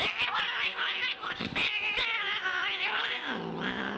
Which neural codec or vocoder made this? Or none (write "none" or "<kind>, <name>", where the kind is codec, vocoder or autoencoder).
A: none